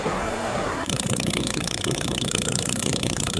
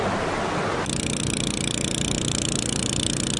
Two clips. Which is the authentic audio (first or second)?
second